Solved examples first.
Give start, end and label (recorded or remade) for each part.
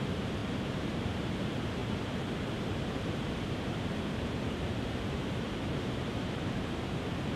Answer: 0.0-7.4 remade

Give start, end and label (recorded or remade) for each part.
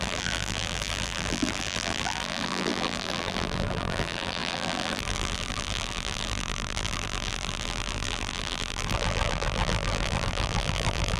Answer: 0.0-11.2 remade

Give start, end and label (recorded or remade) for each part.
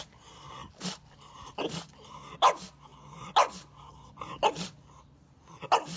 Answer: 0.0-6.0 recorded